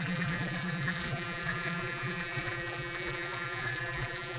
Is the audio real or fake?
fake